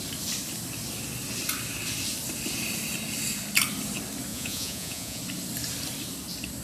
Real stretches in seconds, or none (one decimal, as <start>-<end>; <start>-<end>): 0.0-4.3; 5.2-6.6